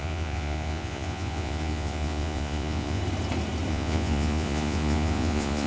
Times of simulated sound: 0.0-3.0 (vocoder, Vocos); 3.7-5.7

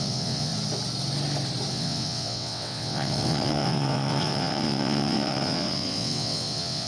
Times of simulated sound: 0.0-0.5 (vocoder, WaveNeXt); 1.7-6.9

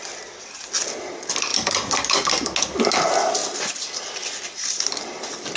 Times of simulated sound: none

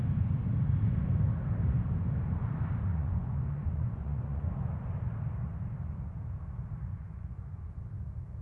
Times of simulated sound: 2.9-4.6 (vocoder, Vocos); 6.9-7.7

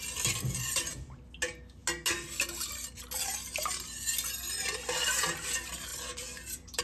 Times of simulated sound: 5.9-6.8 (vocoder, BigVGAN v2)

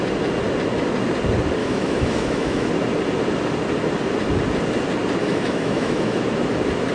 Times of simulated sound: 1.6-2.7 (autoencoder, DAC-VAE); 5.2-6.2

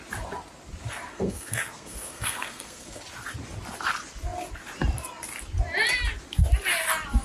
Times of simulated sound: 1.1-3.0 (codec, SNAC)